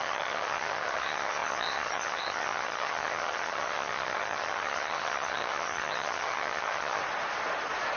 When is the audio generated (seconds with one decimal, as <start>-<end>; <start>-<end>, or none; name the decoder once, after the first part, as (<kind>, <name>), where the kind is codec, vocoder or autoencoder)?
0.0-7.0 (vocoder, HiFi-GAN)